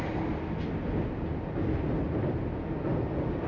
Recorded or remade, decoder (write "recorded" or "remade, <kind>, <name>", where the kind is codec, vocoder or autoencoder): recorded